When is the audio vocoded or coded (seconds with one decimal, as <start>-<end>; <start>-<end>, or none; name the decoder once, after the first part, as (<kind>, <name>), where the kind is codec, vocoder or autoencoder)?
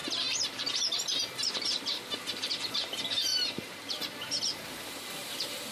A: 2.7-5.7 (vocoder, BigVGAN v2)